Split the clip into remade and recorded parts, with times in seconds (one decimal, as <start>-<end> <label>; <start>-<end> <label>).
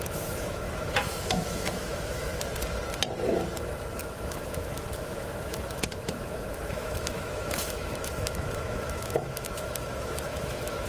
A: 0.0-2.3 remade; 2.3-4.0 recorded; 4.0-10.9 remade